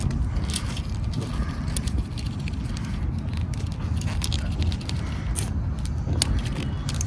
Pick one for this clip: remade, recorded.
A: recorded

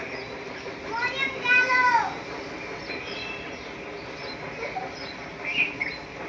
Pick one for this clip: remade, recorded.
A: recorded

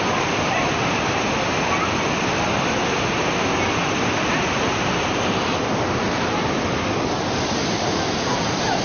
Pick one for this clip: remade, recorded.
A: recorded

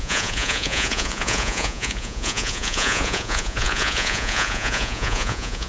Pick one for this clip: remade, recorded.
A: remade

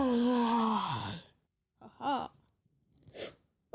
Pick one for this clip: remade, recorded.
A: recorded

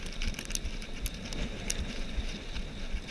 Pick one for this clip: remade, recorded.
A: recorded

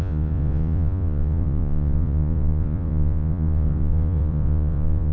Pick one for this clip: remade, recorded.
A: remade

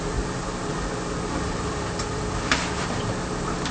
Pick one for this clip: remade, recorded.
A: recorded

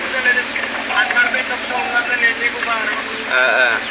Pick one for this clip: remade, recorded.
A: recorded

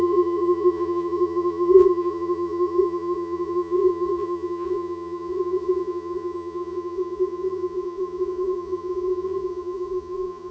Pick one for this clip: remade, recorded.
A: remade